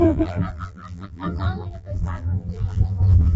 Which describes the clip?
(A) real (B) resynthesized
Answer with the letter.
B